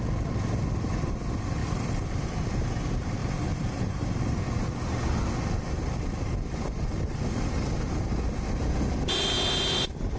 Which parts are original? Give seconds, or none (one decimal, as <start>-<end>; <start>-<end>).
0.0-1.6; 2.3-3.2; 4.4-6.9; 7.5-10.2